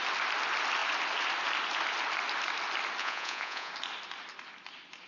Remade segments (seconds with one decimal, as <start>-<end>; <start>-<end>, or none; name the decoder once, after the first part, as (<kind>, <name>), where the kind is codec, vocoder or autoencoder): 3.0-3.7 (vocoder, Vocos)